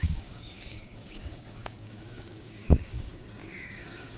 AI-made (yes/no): yes